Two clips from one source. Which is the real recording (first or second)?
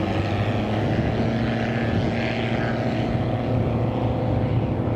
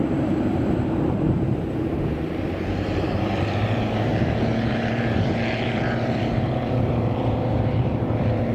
first